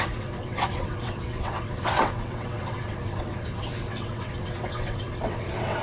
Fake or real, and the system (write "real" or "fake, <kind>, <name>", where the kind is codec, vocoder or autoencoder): fake, vocoder, WaveNeXt